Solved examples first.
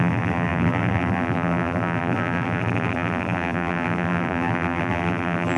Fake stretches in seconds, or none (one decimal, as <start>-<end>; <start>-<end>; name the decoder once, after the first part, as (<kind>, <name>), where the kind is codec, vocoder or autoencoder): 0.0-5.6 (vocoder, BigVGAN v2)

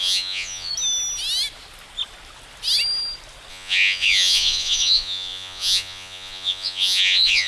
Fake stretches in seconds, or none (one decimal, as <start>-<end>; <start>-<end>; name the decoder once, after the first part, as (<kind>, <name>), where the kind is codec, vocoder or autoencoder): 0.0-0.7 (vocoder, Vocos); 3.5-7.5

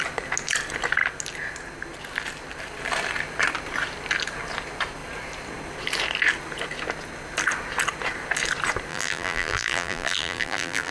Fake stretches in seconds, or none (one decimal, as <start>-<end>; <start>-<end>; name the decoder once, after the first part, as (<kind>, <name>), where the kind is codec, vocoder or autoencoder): 8.9-10.9 (vocoder, BigVGAN v2)

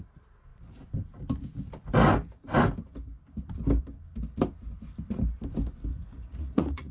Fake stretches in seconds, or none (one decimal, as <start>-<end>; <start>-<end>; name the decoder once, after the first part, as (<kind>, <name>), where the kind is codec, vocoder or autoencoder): 5.9-6.9 (vocoder, Vocos)

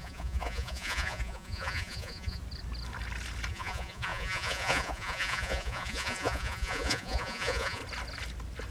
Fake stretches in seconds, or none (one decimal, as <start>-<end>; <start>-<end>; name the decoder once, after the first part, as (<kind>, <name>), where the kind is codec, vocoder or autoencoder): 0.0-2.4 (vocoder, Vocos); 3.5-7.8

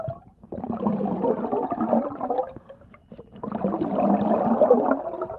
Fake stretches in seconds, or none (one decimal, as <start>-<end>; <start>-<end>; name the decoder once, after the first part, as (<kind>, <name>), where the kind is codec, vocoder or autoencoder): 0.0-0.9 (vocoder, BigVGAN v2); 2.4-3.0; 4.1-5.4

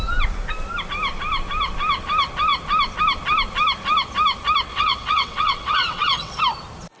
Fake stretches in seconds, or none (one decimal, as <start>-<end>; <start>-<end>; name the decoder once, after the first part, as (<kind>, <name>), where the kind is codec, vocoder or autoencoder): 4.7-6.4 (vocoder, WaveNeXt)